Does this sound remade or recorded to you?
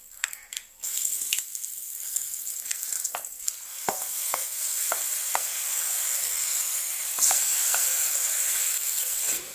remade